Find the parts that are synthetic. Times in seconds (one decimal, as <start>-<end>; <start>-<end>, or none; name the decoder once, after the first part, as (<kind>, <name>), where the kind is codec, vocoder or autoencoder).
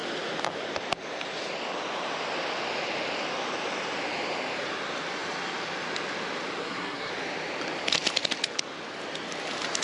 6.6-7.1 (codec, SNAC)